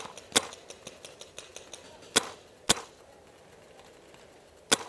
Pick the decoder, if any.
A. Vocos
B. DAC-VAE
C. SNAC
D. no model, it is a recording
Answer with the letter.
D